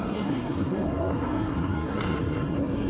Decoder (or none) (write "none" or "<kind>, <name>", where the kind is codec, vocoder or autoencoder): codec, SNAC